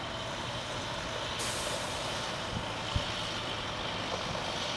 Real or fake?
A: real